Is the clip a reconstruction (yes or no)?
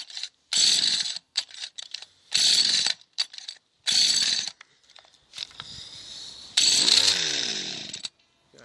yes